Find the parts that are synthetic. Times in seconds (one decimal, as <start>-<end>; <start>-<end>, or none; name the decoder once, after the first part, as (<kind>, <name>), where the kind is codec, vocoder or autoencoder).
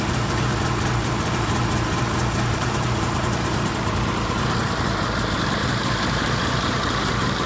0.0-0.5 (vocoder, BigVGAN v2); 2.4-7.5